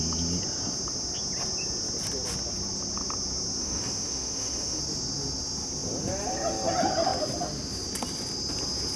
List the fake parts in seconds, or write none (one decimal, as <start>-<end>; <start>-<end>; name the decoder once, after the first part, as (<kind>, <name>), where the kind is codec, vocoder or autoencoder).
3.6-4.8 (autoencoder, DAC-VAE)